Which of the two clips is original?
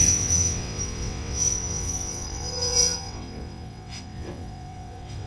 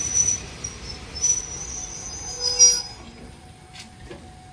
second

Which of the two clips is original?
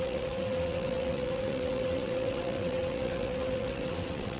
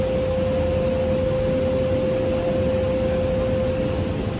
second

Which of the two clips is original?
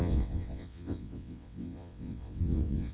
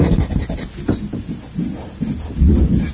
second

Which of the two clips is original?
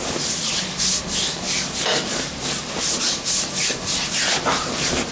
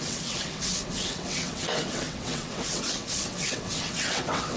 first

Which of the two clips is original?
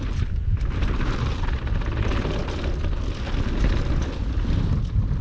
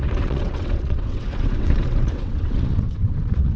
first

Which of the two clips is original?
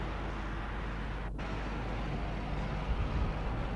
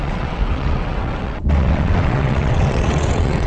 first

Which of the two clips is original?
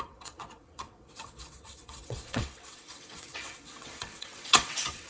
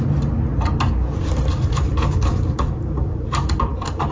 second